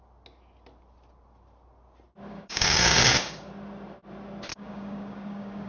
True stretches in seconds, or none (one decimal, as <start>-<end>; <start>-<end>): 0.0-2.3; 3.5-4.5